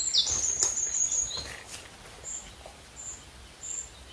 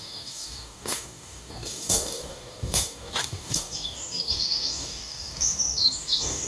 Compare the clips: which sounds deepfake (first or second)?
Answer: second